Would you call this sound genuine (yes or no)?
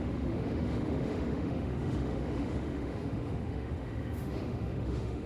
no